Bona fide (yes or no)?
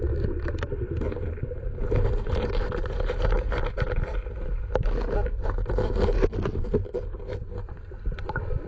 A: no